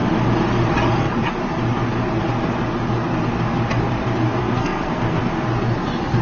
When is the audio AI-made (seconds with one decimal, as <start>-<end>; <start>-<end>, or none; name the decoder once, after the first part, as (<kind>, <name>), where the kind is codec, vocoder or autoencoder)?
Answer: 4.4-5.2 (codec, SNAC)